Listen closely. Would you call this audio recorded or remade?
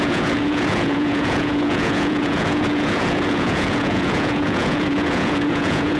remade